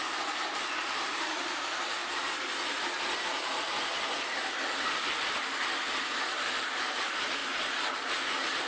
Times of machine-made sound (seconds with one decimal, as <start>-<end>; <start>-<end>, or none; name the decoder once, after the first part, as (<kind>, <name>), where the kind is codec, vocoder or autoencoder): 0.0-2.0 (vocoder, BigVGAN v2); 5.1-7.4